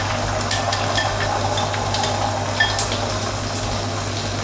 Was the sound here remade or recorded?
recorded